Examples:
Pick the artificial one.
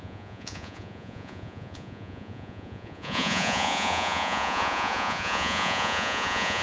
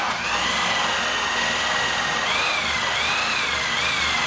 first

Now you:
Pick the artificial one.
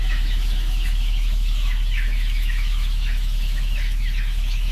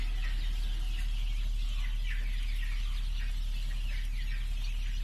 first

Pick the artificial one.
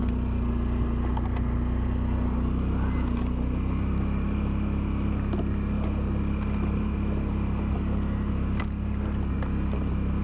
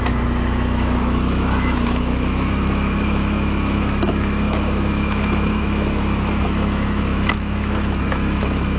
second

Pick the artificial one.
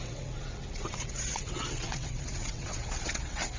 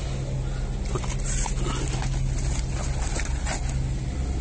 first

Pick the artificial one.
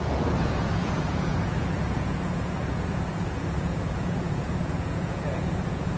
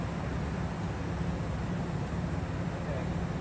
first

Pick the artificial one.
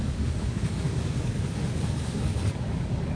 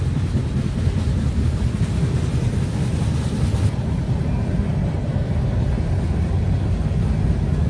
first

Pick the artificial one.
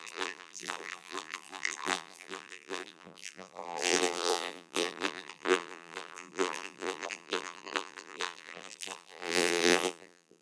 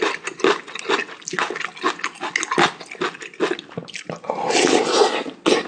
first